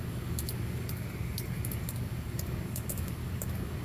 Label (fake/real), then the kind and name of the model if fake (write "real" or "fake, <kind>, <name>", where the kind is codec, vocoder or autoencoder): fake, codec, DAC